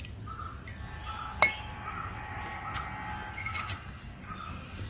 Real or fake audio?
real